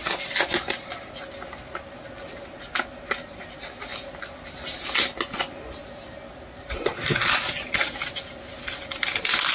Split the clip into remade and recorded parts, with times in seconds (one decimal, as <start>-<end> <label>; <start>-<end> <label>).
0.0-9.5 recorded